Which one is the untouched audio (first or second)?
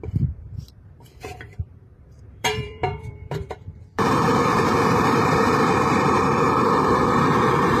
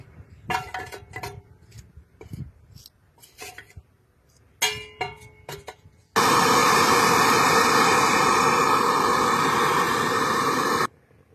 second